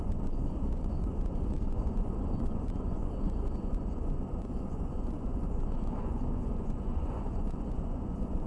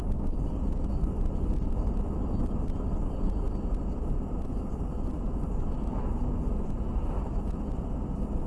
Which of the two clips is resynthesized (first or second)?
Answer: first